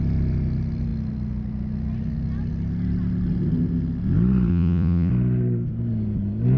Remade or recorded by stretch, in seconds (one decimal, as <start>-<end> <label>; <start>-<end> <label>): 0.0-4.5 recorded; 4.5-5.1 remade; 5.1-6.6 recorded